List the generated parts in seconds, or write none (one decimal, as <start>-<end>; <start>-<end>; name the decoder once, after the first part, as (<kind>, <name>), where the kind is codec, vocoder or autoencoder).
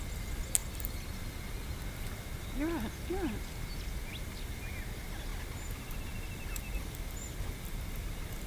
none